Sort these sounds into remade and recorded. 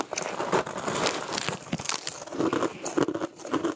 recorded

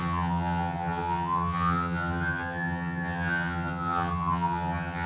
remade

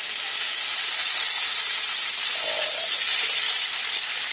recorded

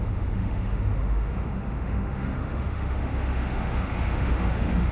remade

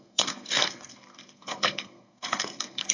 remade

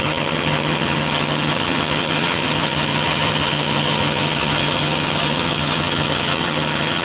remade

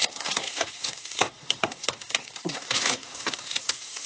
remade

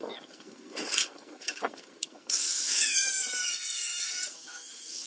remade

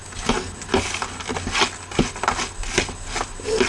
recorded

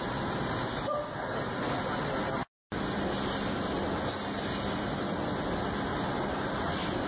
recorded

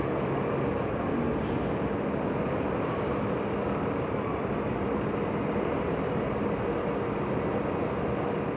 recorded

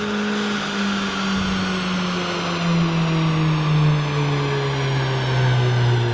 recorded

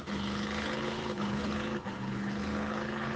remade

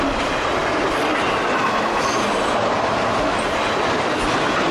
recorded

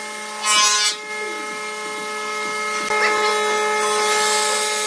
recorded